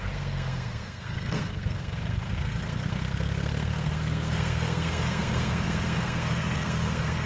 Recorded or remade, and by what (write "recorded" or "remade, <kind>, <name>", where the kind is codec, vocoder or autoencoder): remade, codec, SNAC